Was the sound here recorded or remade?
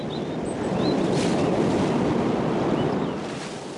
recorded